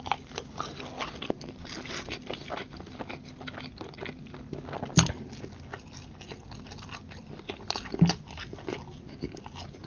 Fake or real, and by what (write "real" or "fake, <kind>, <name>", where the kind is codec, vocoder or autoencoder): real